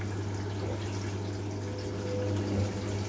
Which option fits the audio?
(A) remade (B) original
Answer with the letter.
B